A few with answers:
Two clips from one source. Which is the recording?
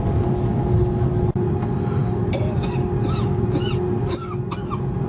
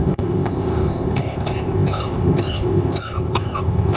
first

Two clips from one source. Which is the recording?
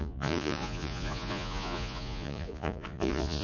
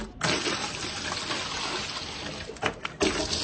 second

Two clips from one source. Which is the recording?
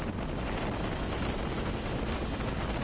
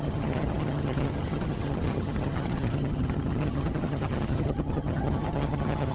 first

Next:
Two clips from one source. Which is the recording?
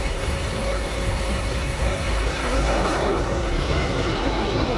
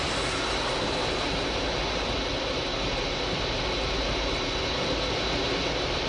second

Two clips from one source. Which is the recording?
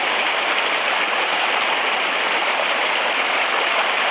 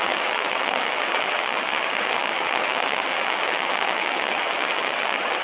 first